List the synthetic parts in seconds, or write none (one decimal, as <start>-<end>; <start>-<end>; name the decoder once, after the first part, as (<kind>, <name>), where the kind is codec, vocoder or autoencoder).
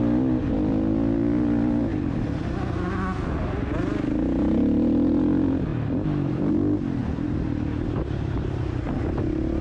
7.0-9.2 (vocoder, BigVGAN v2)